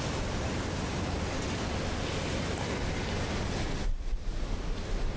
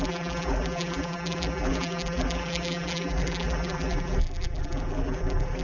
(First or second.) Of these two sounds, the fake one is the second